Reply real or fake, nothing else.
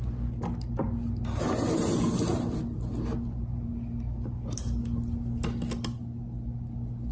real